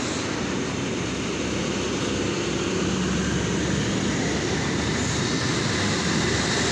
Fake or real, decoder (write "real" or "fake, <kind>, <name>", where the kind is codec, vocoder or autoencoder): real